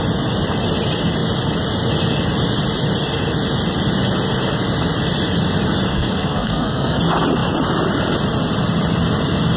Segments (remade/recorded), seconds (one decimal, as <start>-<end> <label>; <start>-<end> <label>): 0.0-5.9 recorded; 5.9-7.0 remade; 7.0-9.6 recorded